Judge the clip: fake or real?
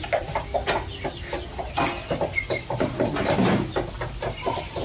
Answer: real